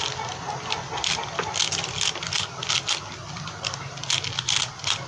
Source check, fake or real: real